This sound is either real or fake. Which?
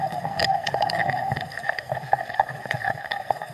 fake